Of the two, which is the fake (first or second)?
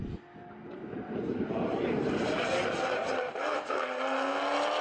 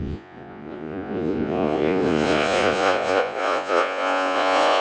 second